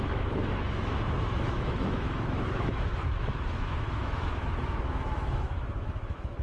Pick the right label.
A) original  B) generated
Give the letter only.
B